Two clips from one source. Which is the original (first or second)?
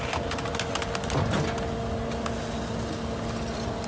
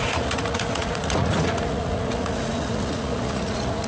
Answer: first